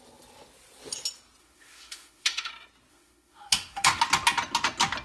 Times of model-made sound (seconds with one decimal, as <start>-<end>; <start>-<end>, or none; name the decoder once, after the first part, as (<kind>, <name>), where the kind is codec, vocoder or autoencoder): 1.4-2.5 (autoencoder, DAC-VAE); 2.9-4.0